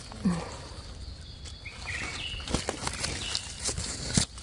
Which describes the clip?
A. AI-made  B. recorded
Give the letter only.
B